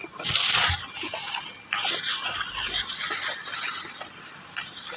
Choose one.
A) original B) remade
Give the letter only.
A